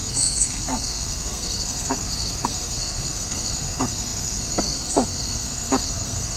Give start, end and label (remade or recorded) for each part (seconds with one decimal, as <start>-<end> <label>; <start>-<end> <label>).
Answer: 0.0-6.4 remade